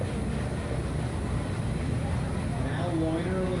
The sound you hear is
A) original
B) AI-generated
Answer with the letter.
A